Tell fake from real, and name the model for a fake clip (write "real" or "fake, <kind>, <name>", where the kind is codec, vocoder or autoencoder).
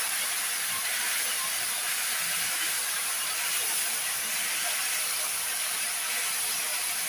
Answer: fake, vocoder, BigVGAN v2